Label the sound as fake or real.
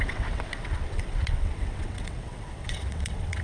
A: fake